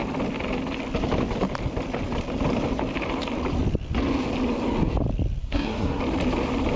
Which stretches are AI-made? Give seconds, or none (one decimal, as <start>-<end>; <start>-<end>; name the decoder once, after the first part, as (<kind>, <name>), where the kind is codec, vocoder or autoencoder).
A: 5.4-6.0 (codec, SNAC)